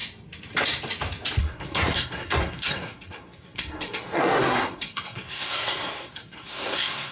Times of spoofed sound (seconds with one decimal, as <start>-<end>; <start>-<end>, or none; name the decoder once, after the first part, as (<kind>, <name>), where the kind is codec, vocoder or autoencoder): 1.4-7.1 (codec, SNAC)